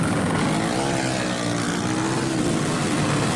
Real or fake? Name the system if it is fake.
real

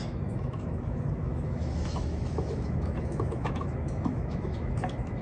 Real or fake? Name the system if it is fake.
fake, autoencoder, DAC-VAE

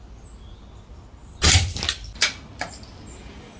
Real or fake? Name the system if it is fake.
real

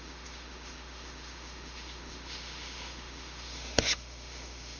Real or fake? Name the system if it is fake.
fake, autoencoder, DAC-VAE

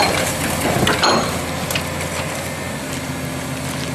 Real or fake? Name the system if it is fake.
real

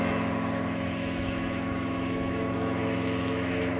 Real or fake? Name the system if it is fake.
fake, autoencoder, DAC-VAE